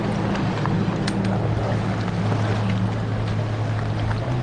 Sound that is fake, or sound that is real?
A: real